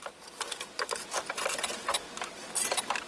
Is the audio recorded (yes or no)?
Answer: yes